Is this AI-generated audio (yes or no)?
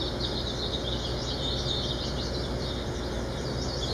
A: no